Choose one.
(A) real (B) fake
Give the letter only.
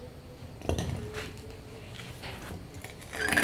A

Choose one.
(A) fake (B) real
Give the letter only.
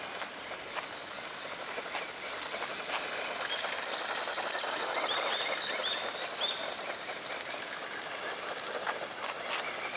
B